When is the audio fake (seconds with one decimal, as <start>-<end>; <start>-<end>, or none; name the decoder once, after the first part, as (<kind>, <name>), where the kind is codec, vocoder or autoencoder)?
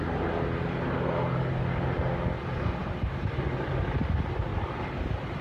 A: 2.8-3.3 (vocoder, BigVGAN v2); 4.5-5.4